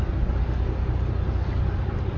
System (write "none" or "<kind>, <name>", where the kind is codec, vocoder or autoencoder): none